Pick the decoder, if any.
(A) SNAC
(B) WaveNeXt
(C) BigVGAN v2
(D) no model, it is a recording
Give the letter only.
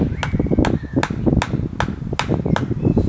D